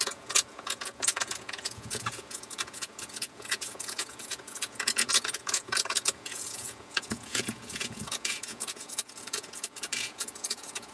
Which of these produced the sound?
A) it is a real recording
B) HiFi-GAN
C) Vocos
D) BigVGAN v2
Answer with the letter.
C